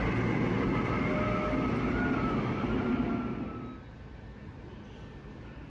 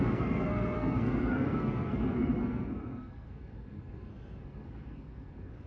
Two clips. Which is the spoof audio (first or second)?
second